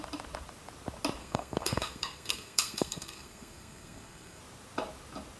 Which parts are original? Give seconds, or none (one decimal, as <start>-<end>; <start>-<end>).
0.0-1.2; 4.4-5.4